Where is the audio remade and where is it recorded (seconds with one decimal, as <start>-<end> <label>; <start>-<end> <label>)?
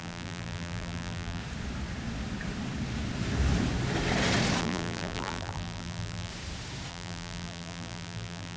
0.0-1.4 remade; 1.4-4.6 recorded; 4.6-6.3 remade; 6.3-6.9 recorded; 6.9-8.6 remade